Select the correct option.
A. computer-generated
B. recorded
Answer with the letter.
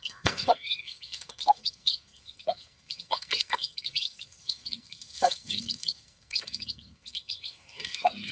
A